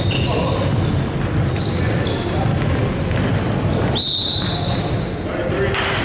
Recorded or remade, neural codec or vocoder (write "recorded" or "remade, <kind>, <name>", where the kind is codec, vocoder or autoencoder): recorded